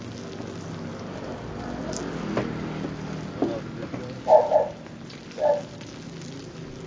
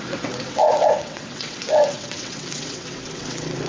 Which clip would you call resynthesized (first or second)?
second